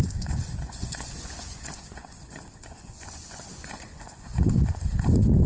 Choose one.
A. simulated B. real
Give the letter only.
A